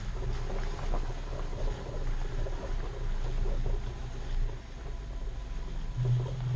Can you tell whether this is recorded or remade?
recorded